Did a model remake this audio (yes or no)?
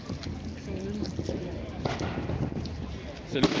no